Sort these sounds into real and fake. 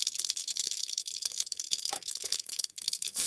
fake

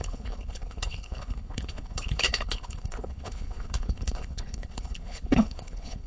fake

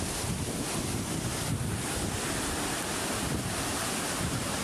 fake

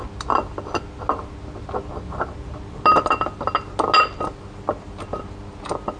real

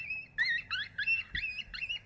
real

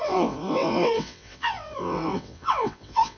fake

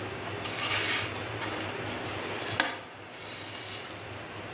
real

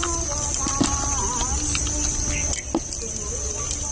real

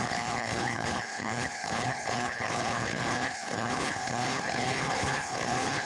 fake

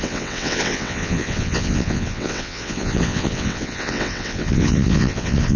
fake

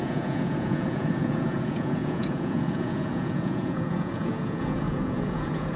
fake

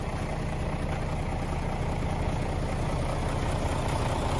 real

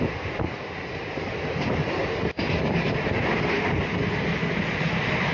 real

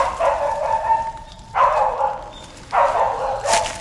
real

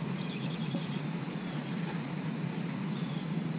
fake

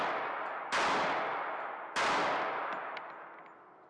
real